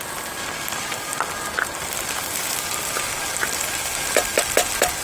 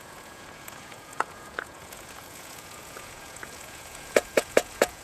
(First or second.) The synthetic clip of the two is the second